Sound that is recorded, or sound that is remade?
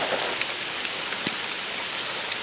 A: recorded